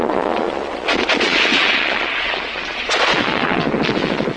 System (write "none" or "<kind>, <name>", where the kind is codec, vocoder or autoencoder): vocoder, Vocos